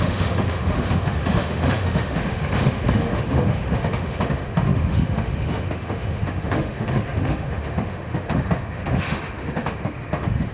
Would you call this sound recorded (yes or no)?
no